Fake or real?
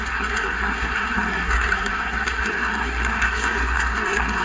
fake